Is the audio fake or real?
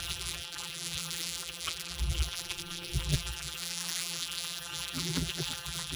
fake